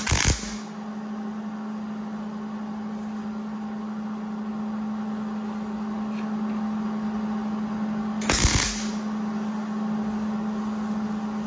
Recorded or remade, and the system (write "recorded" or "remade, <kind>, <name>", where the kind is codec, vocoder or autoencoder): recorded